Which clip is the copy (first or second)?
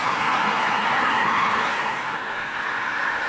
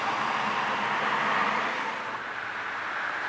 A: first